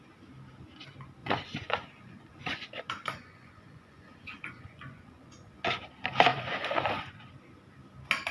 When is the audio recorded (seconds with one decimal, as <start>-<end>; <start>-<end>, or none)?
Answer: 0.0-1.2; 5.5-6.3; 7.3-8.3